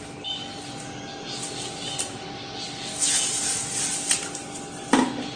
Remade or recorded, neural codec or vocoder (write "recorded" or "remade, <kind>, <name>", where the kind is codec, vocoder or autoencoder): recorded